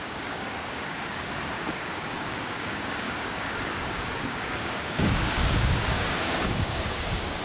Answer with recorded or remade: remade